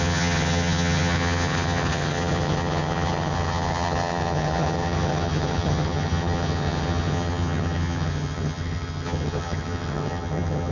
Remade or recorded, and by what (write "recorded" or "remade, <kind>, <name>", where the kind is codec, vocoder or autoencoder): remade, vocoder, HiFi-GAN